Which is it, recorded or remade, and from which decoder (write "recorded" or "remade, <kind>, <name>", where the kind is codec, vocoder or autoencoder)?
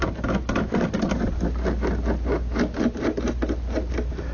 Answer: recorded